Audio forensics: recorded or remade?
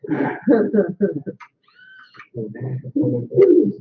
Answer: recorded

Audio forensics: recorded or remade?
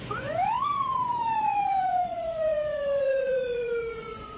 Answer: remade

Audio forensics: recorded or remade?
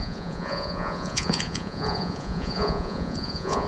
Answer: remade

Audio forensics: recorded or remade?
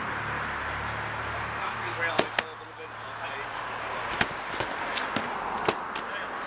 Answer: recorded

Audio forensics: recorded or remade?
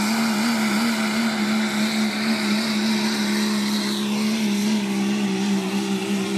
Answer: recorded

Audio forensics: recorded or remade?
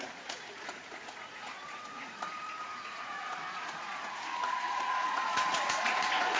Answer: remade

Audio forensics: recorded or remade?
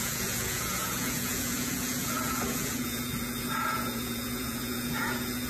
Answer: remade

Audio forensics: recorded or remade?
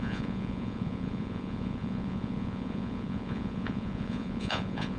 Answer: remade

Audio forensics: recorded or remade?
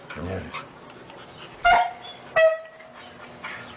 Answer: recorded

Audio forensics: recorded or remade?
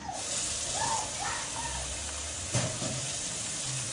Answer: recorded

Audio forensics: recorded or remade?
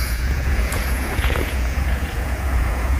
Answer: remade